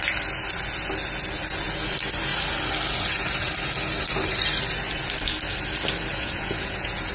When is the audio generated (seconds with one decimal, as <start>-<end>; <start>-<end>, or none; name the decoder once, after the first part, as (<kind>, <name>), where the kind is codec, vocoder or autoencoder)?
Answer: 6.1-7.1 (vocoder, Vocos)